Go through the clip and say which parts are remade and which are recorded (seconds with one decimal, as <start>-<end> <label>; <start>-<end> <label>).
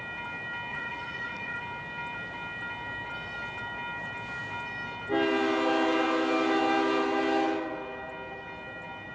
0.0-0.7 recorded; 0.7-1.6 remade; 1.6-9.1 recorded